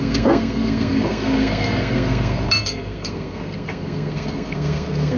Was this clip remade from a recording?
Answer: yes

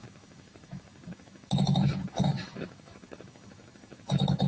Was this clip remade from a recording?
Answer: yes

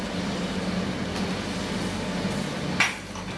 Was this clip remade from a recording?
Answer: no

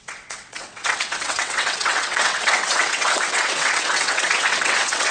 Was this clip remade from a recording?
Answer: yes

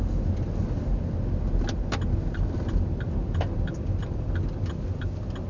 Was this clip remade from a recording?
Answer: no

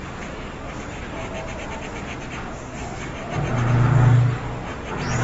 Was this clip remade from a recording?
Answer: no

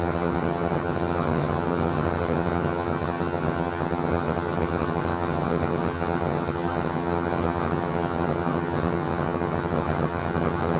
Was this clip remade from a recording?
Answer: yes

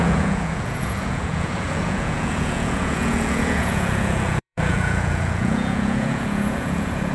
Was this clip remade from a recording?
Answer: yes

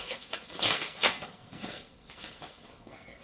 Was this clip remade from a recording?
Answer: yes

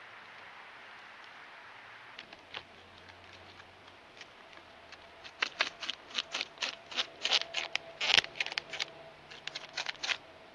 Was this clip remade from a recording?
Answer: no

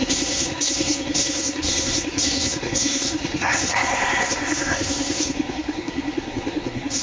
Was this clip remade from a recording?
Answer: yes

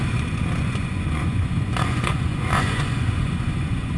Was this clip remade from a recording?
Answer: yes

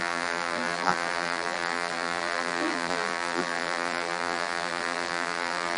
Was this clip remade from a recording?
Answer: yes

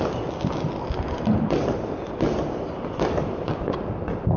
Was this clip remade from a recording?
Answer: no